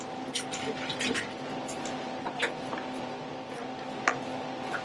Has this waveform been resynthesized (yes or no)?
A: no